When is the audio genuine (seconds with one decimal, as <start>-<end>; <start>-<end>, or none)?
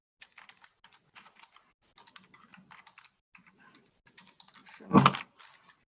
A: 0.0-6.0